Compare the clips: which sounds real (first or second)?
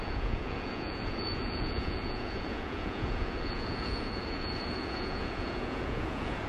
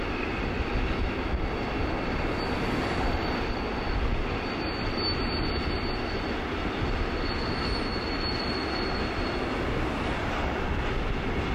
second